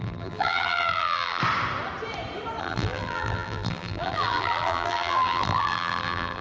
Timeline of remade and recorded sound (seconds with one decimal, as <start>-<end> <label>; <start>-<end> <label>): 0.0-1.4 remade; 1.4-2.6 recorded; 2.6-6.4 remade

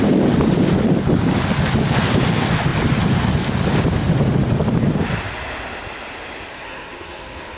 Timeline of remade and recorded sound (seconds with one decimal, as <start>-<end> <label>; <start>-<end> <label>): 0.0-6.5 recorded; 6.5-7.6 remade

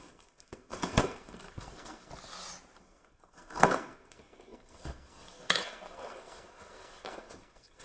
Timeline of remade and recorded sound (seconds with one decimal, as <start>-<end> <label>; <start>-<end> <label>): 0.0-2.1 remade; 2.1-2.8 recorded; 2.8-7.8 remade